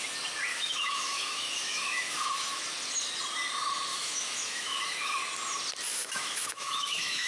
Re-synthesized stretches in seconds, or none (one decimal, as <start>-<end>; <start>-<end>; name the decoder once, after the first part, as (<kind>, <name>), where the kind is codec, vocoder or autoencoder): 0.5-2.6 (autoencoder, DAC-VAE); 3.9-5.2; 6.0-7.3